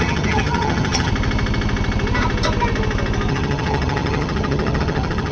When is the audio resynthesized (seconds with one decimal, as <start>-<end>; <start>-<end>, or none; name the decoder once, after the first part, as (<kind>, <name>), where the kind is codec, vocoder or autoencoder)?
0.0-1.1 (vocoder, HiFi-GAN); 3.3-5.3